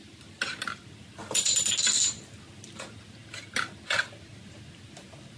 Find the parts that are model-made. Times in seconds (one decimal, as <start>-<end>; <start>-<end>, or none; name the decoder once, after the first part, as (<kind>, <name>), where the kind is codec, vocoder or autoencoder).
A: none